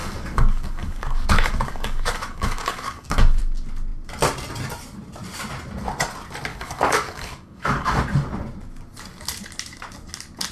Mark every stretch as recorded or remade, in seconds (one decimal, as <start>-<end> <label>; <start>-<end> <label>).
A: 0.0-3.4 remade; 3.4-6.5 recorded; 6.5-8.0 remade; 8.0-10.5 recorded